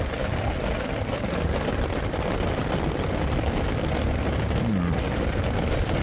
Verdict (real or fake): real